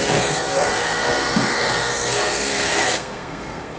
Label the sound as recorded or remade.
remade